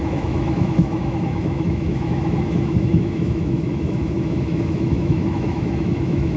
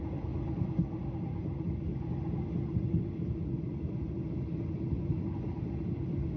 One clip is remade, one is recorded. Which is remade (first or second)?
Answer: first